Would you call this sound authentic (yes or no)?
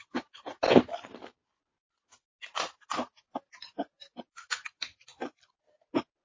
yes